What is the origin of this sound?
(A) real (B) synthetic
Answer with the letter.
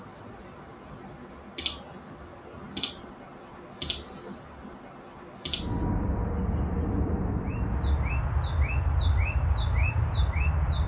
A